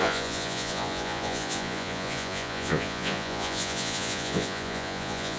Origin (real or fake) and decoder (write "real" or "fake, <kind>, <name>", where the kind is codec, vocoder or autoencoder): fake, vocoder, Vocos